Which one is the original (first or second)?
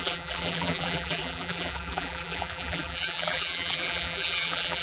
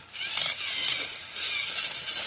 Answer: second